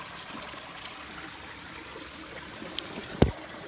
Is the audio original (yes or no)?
yes